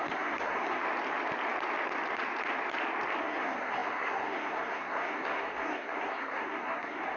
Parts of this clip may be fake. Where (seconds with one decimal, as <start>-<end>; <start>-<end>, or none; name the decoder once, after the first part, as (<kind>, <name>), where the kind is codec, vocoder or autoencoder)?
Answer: 0.0-0.8 (codec, SNAC); 3.2-7.2